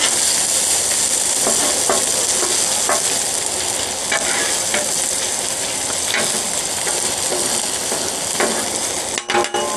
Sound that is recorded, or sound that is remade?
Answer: recorded